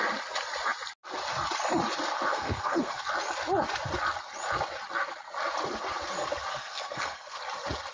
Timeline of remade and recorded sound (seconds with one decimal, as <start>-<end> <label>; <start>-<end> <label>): 0.0-2.3 recorded; 2.3-3.0 remade; 3.0-6.5 recorded; 6.5-7.4 remade; 7.4-7.9 recorded